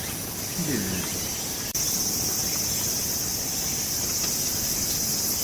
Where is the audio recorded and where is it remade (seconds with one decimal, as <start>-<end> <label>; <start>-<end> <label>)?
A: 0.0-5.4 recorded